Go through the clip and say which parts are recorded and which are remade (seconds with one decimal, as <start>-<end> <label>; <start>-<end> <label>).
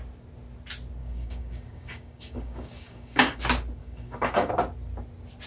0.0-1.0 recorded; 1.0-3.4 remade; 3.4-3.8 recorded; 3.8-4.5 remade; 4.5-5.5 recorded